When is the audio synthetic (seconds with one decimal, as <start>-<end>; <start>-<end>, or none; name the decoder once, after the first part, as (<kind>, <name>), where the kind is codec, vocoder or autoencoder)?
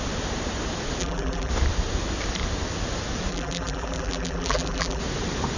1.0-1.5 (vocoder, BigVGAN v2); 3.3-5.0